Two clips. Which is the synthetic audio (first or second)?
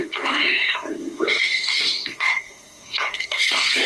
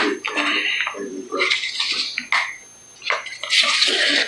first